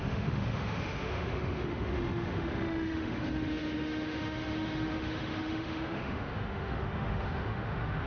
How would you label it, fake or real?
fake